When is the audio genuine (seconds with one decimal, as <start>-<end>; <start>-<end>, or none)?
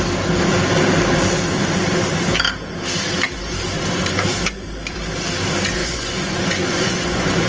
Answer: 0.0-5.8